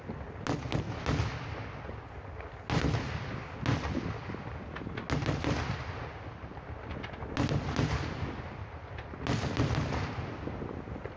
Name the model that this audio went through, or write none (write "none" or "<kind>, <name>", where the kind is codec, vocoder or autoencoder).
none